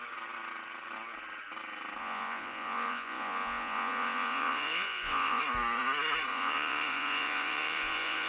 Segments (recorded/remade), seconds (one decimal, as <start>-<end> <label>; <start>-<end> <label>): 0.0-2.0 recorded; 2.0-5.4 remade; 5.4-6.3 recorded; 6.3-8.3 remade